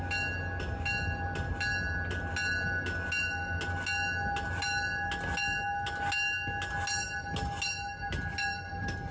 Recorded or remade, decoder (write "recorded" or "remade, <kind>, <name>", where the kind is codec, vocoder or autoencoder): recorded